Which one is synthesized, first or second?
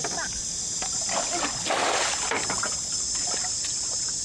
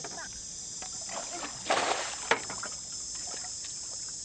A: first